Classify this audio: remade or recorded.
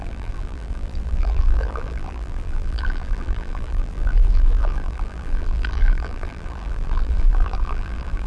remade